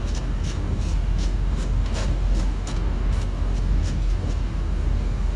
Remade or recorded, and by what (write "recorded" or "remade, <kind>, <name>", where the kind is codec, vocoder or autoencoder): remade, codec, DAC